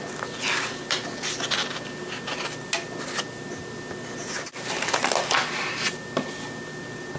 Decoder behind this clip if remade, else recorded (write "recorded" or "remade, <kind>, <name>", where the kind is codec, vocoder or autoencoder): recorded